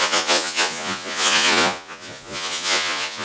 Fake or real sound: fake